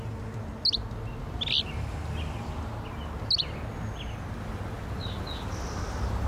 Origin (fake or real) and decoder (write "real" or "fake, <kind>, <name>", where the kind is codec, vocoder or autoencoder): real